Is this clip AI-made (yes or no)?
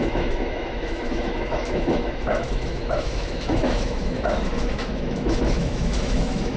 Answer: yes